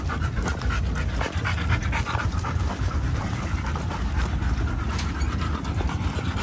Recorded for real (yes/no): yes